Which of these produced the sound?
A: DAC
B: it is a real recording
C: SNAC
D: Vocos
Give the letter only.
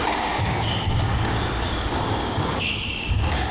A